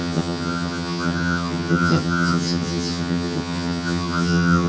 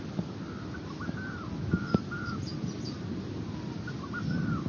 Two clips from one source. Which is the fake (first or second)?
first